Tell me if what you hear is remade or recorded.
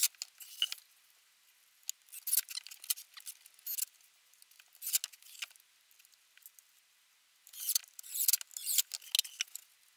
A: recorded